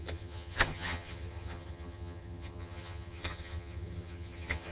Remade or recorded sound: remade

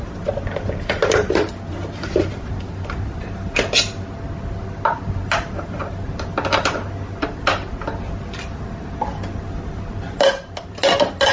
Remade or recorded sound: recorded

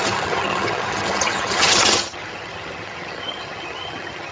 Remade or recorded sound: remade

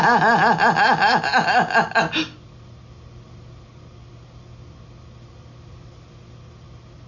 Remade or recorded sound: recorded